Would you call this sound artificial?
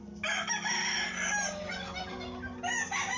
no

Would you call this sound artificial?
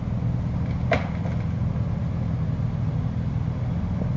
no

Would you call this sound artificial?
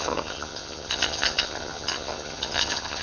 yes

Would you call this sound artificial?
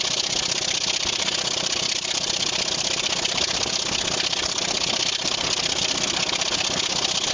no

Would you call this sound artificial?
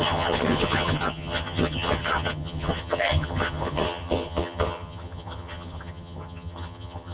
yes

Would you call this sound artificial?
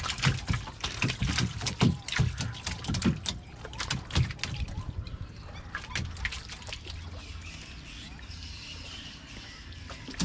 no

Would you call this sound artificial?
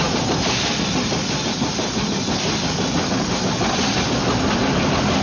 no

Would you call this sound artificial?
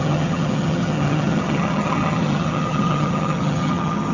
yes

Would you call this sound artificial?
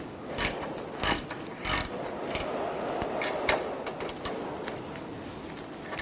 no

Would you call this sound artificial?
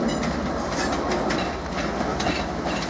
no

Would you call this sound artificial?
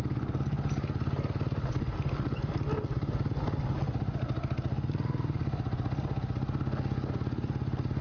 no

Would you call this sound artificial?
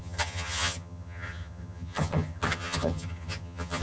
yes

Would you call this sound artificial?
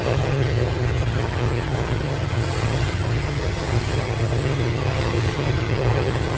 yes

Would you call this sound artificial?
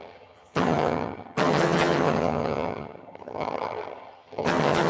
yes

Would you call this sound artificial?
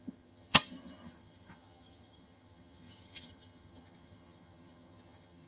yes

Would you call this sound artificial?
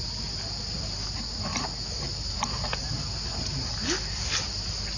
no